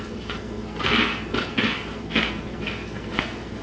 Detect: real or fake fake